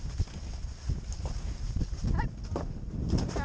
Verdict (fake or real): real